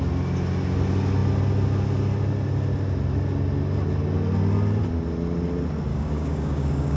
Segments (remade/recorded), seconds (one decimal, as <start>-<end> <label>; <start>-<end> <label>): 0.0-5.9 recorded; 5.9-7.0 remade